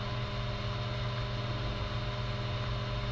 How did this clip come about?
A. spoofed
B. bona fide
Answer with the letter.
B